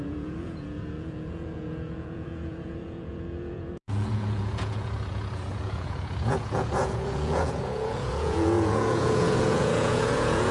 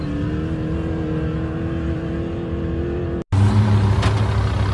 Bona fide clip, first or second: second